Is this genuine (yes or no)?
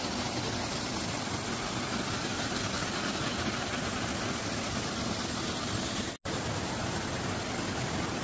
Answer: yes